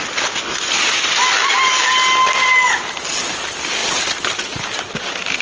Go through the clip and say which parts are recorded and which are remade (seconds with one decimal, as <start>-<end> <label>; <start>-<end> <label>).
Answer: 0.0-5.4 recorded